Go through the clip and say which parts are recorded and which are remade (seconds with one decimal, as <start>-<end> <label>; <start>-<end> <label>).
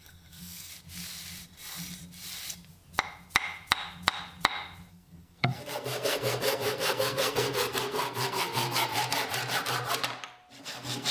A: 0.0-0.7 remade; 0.7-4.9 recorded; 4.9-8.9 remade; 8.9-10.6 recorded; 10.6-11.1 remade